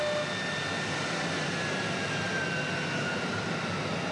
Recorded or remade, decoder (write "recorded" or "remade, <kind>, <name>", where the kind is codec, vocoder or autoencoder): recorded